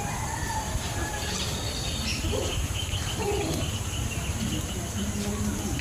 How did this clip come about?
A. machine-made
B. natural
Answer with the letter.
B